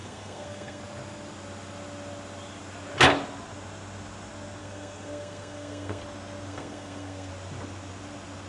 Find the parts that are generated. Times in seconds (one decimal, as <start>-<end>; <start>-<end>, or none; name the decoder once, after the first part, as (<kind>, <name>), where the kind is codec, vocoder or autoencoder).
0.0-0.8 (codec, SNAC); 4.6-6.0; 6.5-7.3